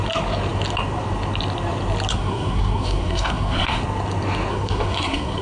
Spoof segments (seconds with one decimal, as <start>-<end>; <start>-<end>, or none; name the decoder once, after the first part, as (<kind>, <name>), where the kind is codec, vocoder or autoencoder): 2.1-3.8 (codec, SNAC); 4.5-5.4